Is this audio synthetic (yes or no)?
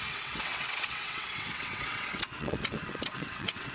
yes